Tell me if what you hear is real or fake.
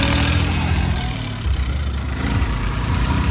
fake